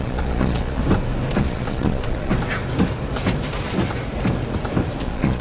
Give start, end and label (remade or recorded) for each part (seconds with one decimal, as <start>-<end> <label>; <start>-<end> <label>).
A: 0.0-0.8 remade; 0.8-1.4 recorded; 1.4-2.3 remade; 2.3-5.0 recorded; 5.0-5.4 remade